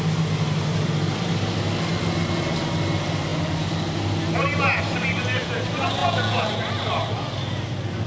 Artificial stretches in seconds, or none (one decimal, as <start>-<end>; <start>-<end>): 6.0-6.6